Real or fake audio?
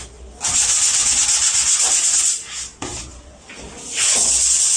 real